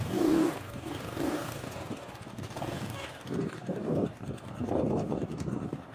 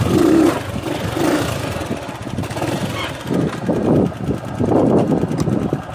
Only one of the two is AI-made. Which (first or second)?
first